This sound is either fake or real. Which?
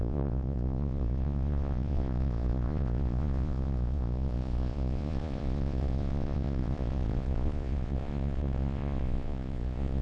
fake